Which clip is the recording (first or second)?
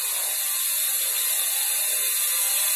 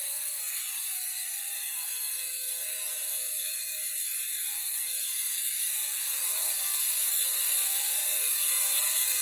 first